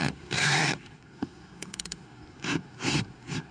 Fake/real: fake